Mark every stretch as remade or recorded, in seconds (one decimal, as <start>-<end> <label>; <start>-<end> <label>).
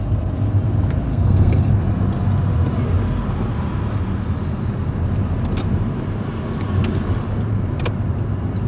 0.0-1.1 recorded; 1.1-1.7 remade; 1.7-8.7 recorded